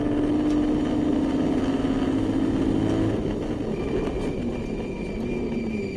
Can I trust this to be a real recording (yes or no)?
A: yes